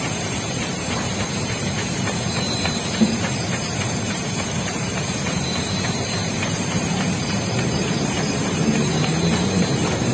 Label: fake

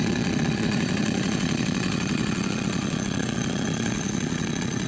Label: fake